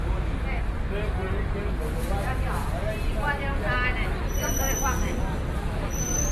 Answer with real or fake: real